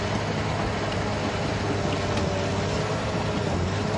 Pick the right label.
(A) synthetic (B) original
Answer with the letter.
B